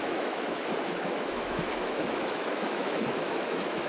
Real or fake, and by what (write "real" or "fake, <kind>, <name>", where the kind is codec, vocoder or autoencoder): fake, autoencoder, DAC-VAE